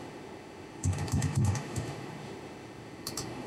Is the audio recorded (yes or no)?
no